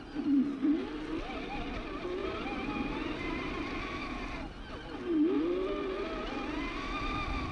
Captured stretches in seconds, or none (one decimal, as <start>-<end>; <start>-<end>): 0.0-2.2; 3.5-7.5